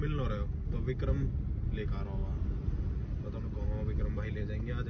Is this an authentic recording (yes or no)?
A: yes